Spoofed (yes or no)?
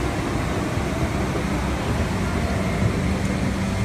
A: no